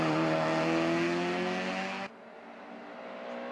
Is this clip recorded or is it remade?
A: recorded